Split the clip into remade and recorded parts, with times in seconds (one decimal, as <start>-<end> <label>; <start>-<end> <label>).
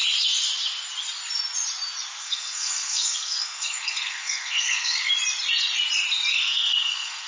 0.0-2.2 recorded; 2.2-5.1 remade; 5.1-6.3 recorded; 6.3-7.3 remade